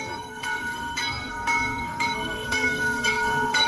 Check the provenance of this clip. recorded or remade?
remade